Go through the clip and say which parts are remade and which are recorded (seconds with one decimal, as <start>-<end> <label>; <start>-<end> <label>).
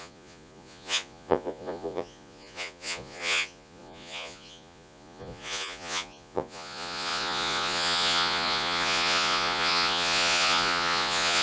0.0-11.4 remade